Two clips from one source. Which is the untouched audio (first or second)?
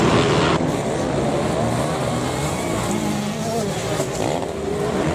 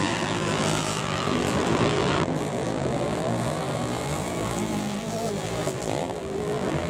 first